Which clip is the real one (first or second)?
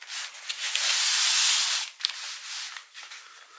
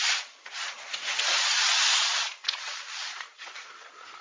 first